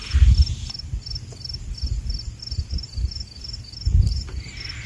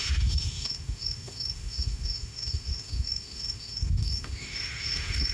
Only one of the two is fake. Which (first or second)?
second